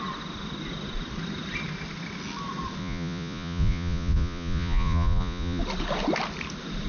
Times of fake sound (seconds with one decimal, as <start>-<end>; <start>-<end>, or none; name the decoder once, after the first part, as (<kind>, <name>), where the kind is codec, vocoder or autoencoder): 2.8-5.6 (vocoder, Vocos)